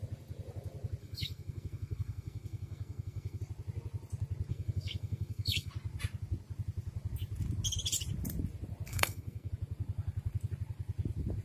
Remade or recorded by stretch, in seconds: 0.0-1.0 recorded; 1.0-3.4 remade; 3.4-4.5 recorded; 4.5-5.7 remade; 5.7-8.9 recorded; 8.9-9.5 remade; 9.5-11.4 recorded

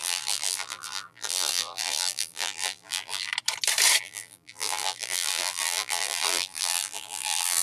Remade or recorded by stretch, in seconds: 0.0-3.3 remade; 3.3-4.0 recorded; 4.0-7.6 remade

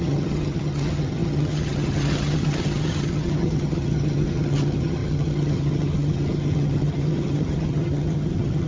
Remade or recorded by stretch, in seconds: 0.0-8.7 remade